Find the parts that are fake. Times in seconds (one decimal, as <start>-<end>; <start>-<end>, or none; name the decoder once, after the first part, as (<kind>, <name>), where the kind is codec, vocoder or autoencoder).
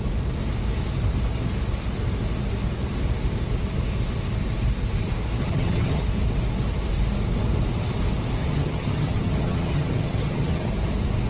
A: 5.4-6.0 (vocoder, HiFi-GAN); 8.4-10.7